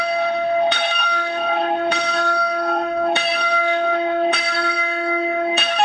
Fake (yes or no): yes